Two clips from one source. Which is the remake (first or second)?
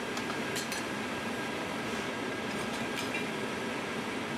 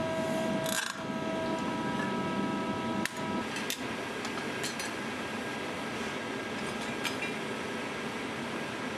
first